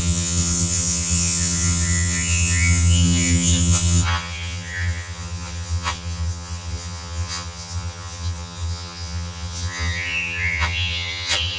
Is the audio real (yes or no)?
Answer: no